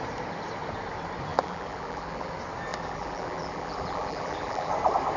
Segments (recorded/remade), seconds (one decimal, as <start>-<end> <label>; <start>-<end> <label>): 0.0-1.3 recorded; 1.3-2.3 remade; 2.3-2.7 recorded; 2.7-4.7 remade; 4.7-5.2 recorded